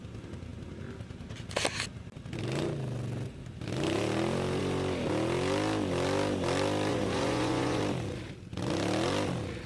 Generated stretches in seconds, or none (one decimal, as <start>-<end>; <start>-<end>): 6.9-7.8